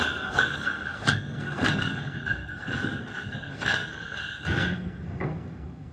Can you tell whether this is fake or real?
fake